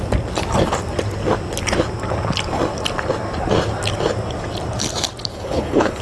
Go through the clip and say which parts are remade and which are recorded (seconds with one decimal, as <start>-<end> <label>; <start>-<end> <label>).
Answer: 0.0-5.3 recorded; 5.3-6.0 remade